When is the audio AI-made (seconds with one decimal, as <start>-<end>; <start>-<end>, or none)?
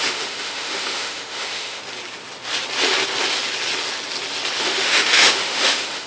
0.0-1.8; 4.6-6.1